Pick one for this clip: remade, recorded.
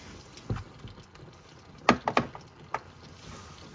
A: recorded